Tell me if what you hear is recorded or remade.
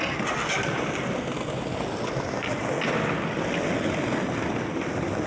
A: recorded